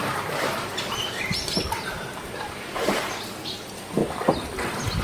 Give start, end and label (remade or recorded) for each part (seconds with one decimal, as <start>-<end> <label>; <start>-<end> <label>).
0.0-0.7 recorded; 0.7-2.2 remade; 2.2-5.0 recorded